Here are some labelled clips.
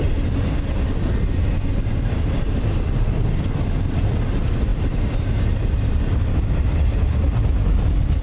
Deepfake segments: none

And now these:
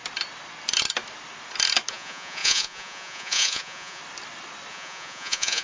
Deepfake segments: 1.9-4.0 (vocoder, Vocos); 4.7-5.6

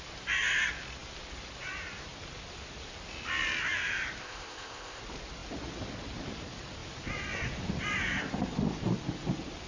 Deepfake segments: 4.2-5.0 (codec, ZipCodec)

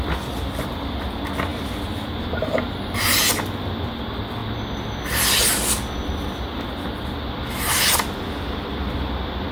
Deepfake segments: 1.5-3.3 (vocoder, BigVGAN v2)

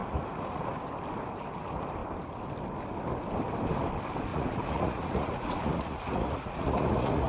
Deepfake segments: 0.0-0.6 (vocoder, Vocos); 4.3-7.3

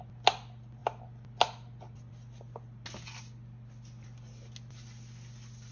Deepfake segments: none

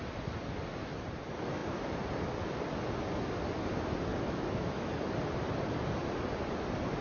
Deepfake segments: 4.1-4.9 (autoencoder, DAC-VAE)

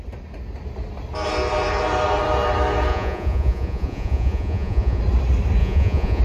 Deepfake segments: 2.9-5.0 (vocoder, Vocos); 5.6-6.2